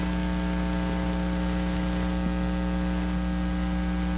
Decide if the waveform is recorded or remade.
recorded